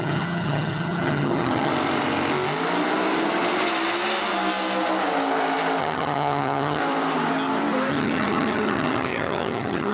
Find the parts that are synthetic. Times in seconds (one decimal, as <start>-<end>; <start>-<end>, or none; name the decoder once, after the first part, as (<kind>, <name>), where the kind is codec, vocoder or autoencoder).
0.0-1.7 (vocoder, HiFi-GAN); 5.8-6.8; 7.9-9.9